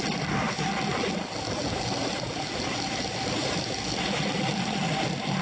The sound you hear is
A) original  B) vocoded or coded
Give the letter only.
A